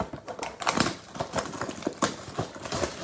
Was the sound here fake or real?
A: real